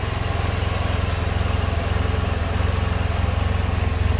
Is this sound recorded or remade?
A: recorded